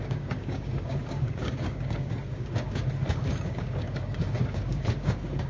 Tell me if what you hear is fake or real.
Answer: fake